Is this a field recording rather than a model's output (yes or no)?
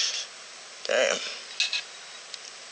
yes